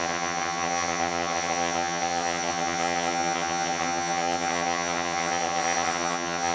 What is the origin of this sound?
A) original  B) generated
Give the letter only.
B